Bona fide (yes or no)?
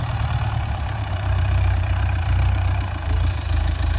no